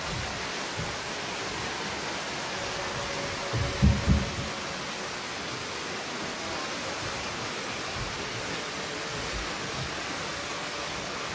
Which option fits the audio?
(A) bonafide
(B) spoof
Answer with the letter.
A